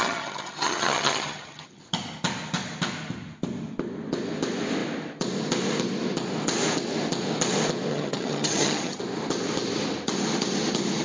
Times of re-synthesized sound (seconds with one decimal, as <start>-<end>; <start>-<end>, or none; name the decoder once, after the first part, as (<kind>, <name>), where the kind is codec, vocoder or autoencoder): 0.0-1.8 (vocoder, HiFi-GAN); 7.9-9.0